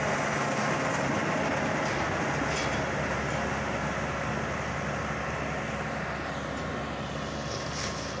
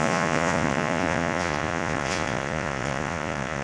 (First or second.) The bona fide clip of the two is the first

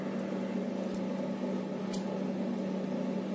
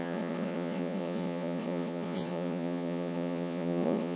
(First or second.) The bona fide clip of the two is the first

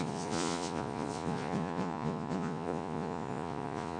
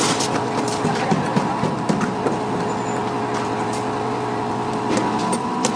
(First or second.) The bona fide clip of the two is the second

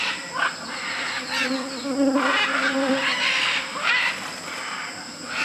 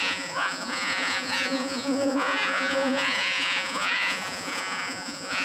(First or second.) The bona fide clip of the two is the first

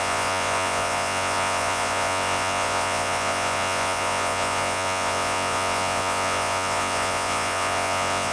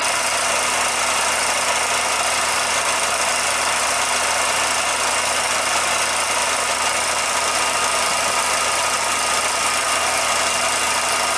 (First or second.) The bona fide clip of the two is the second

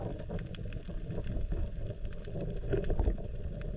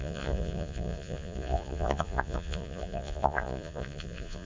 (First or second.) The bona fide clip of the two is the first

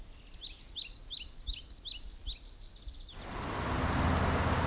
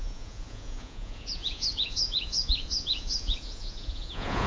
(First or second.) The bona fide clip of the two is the first